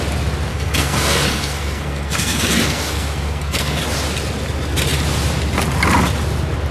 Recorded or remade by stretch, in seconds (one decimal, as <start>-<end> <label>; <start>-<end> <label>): 0.0-0.5 recorded; 0.5-3.8 remade; 3.8-6.7 recorded